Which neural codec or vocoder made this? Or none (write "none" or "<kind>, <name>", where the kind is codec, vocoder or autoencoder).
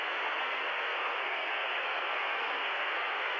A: codec, SNAC